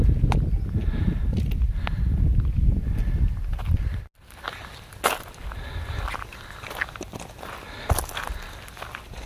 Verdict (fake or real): real